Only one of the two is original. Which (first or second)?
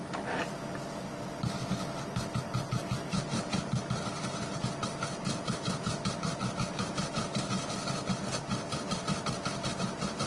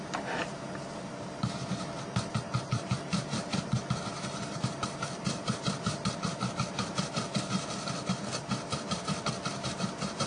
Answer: first